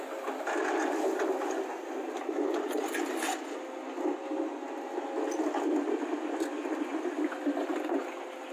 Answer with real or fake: real